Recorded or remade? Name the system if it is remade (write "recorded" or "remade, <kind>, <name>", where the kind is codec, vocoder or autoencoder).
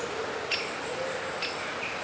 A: recorded